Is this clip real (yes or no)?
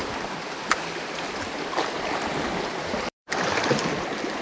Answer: no